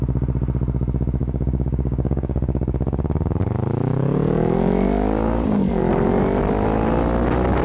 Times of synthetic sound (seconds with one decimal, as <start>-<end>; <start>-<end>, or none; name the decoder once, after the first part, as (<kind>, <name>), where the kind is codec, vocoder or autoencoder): 1.2-5.8 (codec, DAC)